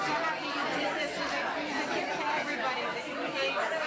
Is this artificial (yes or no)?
no